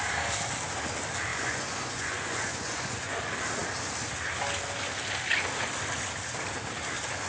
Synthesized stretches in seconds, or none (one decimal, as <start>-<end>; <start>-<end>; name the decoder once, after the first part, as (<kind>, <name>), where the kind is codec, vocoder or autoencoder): 1.3-3.2 (vocoder, Vocos)